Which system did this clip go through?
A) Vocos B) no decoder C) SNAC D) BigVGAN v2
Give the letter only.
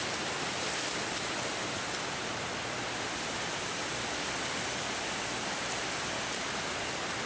B